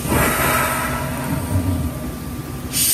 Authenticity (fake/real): real